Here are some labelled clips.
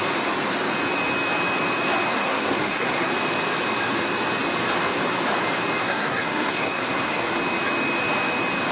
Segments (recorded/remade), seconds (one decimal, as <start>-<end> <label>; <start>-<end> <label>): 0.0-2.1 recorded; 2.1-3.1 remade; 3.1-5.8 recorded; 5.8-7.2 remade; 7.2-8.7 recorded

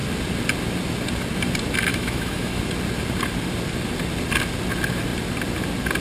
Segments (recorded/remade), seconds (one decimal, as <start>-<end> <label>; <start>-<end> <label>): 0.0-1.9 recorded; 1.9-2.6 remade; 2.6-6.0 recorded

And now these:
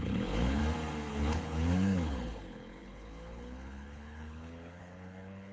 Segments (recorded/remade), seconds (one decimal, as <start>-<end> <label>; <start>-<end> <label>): 0.0-0.6 remade; 0.6-1.1 recorded; 1.1-5.5 remade